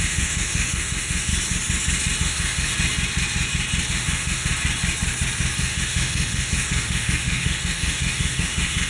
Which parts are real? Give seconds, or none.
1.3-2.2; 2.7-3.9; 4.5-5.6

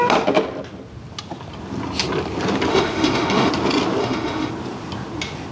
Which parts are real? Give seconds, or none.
0.0-2.7; 3.5-4.0; 4.5-5.5

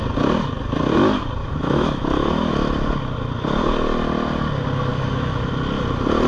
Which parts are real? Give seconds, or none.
0.0-1.4; 2.5-4.9; 5.5-6.3

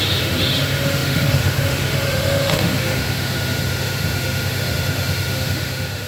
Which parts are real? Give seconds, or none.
none